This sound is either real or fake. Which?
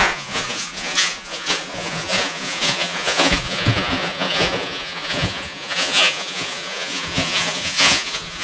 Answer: fake